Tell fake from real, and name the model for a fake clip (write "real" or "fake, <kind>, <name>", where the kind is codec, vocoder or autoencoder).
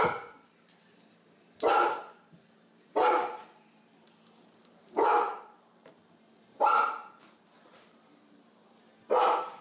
fake, vocoder, BigVGAN v2